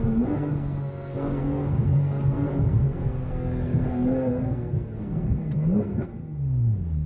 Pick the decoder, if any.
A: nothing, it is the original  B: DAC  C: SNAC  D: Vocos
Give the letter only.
C